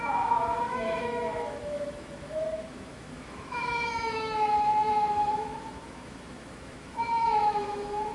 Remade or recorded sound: remade